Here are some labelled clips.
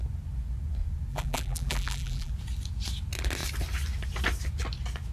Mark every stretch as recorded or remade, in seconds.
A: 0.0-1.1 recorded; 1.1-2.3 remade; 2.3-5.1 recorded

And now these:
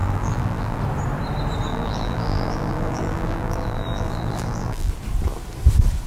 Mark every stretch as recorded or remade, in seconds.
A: 0.0-0.8 remade; 0.8-1.7 recorded; 1.7-4.9 remade; 4.9-6.1 recorded

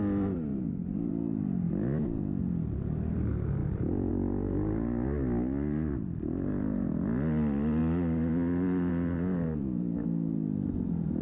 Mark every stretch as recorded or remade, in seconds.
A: 0.0-0.5 recorded; 0.5-1.1 remade; 1.1-3.6 recorded; 3.6-4.1 remade; 4.1-7.8 recorded; 7.8-8.9 remade; 8.9-11.2 recorded

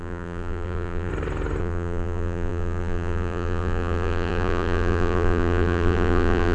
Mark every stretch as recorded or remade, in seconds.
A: 0.0-1.1 remade; 1.1-1.6 recorded; 1.6-6.5 remade

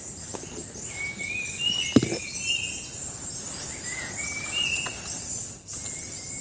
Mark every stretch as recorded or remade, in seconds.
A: 0.0-6.4 recorded